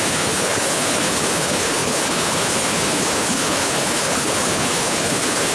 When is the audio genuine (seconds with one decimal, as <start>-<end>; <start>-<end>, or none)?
none